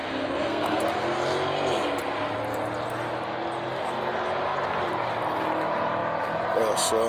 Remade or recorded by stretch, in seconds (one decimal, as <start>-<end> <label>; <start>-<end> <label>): 0.0-0.8 remade; 0.8-7.1 recorded